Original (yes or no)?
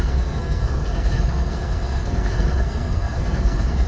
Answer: no